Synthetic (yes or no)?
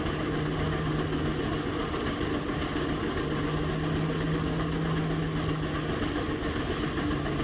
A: no